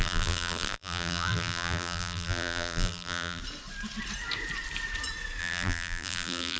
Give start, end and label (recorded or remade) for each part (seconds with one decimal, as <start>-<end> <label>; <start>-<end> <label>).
0.0-3.4 remade; 3.4-5.4 recorded; 5.4-6.6 remade